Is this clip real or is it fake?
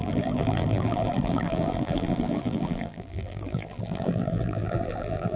fake